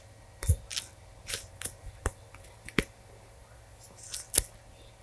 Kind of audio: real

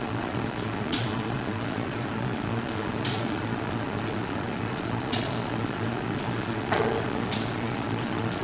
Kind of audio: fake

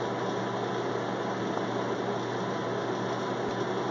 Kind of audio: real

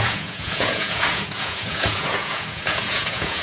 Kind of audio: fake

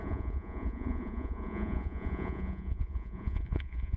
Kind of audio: fake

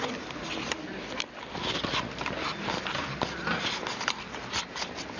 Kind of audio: real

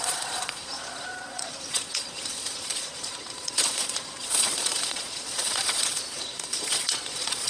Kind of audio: fake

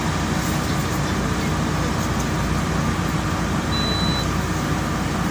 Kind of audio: real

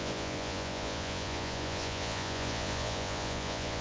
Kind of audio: fake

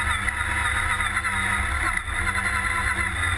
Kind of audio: real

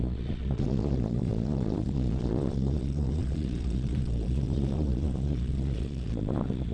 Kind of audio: fake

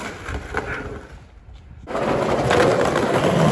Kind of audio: real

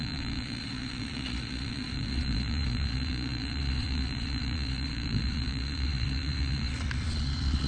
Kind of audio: fake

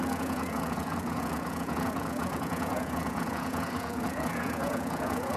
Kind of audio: fake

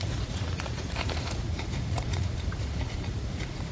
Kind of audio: fake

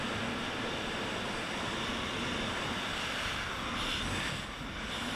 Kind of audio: real